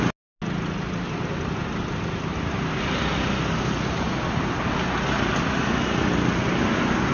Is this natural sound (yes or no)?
yes